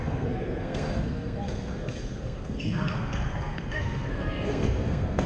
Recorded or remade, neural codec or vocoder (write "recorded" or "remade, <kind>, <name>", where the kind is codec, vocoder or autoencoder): remade, codec, SNAC